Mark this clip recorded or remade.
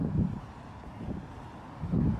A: recorded